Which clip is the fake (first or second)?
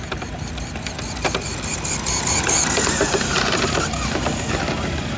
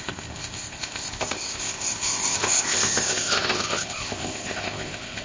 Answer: second